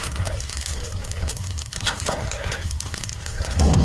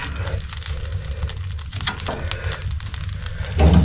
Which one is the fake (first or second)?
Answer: first